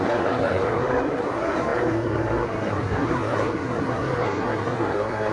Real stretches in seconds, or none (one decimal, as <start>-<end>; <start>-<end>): none